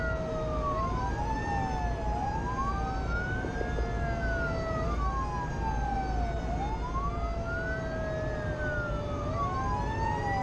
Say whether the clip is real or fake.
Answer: real